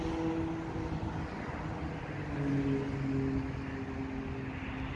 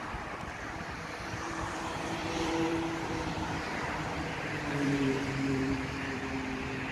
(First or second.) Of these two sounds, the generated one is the second